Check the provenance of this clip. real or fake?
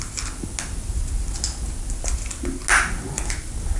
real